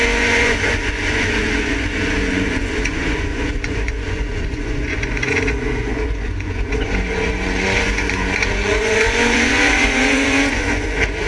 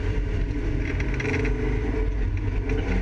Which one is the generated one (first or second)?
first